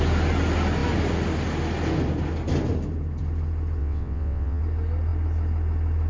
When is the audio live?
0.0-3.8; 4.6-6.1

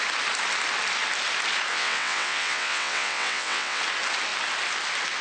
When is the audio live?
0.0-1.7; 3.8-5.2

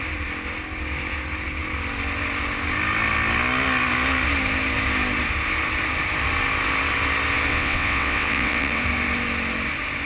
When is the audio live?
0.0-7.5; 8.8-10.1

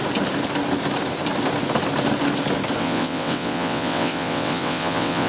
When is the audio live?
0.0-2.8